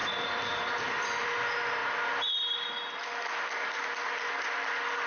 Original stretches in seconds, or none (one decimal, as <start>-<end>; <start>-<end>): 0.0-5.1